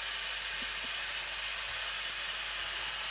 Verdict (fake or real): real